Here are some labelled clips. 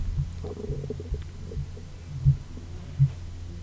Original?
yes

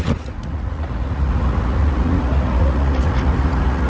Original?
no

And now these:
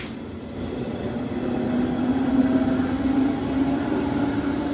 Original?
yes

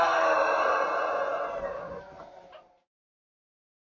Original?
yes